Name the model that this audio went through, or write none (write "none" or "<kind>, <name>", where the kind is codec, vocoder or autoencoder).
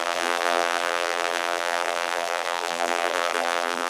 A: vocoder, BigVGAN v2